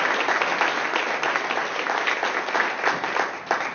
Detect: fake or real real